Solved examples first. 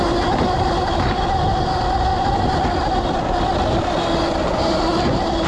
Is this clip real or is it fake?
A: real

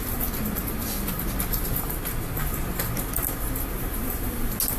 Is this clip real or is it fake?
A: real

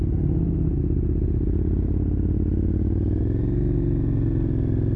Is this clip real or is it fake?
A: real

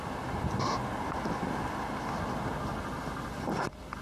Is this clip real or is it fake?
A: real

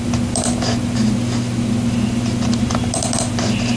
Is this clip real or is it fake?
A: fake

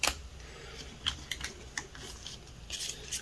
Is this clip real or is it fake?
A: real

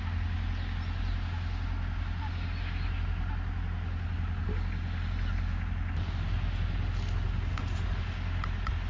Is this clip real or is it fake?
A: real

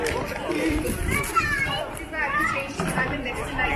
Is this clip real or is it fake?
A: fake